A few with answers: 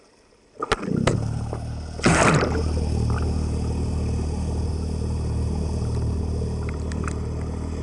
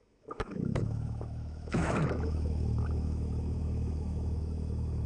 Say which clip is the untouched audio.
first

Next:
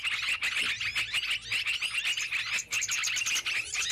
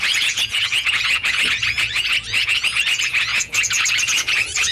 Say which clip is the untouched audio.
first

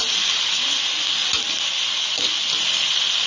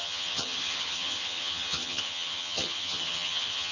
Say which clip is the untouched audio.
first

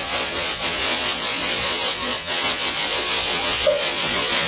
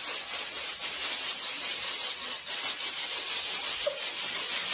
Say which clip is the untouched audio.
second